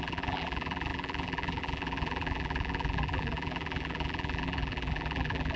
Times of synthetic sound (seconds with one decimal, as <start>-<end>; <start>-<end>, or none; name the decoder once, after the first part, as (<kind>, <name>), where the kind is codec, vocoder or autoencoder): 0.0-5.6 (vocoder, BigVGAN v2)